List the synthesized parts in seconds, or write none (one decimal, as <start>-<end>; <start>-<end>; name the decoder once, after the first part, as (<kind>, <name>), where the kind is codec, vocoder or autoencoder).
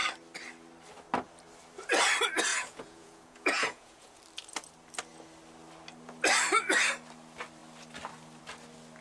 2.5-4.2 (vocoder, Vocos)